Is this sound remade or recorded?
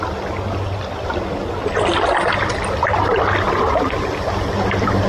recorded